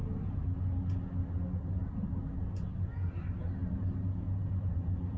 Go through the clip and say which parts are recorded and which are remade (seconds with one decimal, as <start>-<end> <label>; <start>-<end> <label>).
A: 0.0-5.2 recorded

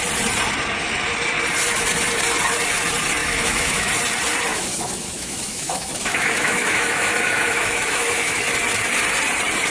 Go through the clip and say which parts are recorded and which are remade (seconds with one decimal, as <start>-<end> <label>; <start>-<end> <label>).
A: 0.0-3.2 recorded; 3.2-3.9 remade; 3.9-4.5 recorded; 4.5-8.4 remade; 8.4-9.7 recorded

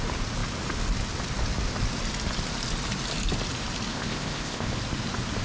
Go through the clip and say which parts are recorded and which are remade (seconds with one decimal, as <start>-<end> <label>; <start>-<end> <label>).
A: 0.0-3.9 recorded; 3.9-4.7 remade; 4.7-5.4 recorded

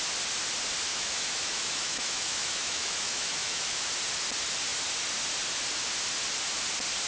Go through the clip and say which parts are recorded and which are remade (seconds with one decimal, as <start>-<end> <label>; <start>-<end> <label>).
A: 0.0-0.9 recorded; 0.9-3.9 remade; 3.9-7.1 recorded

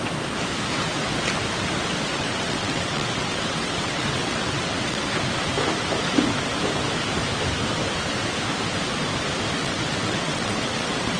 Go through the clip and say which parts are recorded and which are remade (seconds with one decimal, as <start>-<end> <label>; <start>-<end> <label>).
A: 0.0-2.1 recorded; 2.1-5.0 remade; 5.0-9.6 recorded; 9.6-11.2 remade